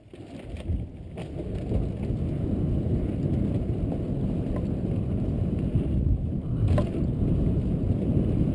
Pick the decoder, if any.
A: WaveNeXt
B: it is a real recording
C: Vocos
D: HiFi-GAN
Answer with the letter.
B